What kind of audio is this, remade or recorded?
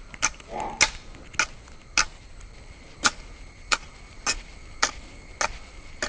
recorded